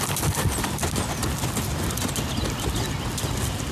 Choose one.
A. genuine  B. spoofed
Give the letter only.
A